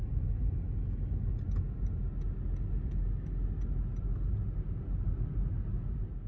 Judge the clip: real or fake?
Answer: real